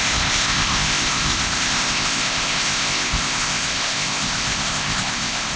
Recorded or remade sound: remade